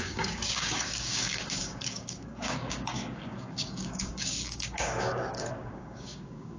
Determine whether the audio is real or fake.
fake